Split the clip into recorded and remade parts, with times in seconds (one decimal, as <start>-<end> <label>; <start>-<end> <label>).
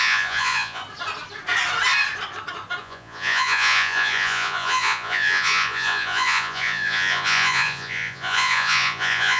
0.0-0.8 remade; 0.8-2.8 recorded; 2.8-9.4 remade